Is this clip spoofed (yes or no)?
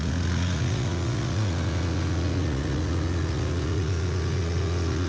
yes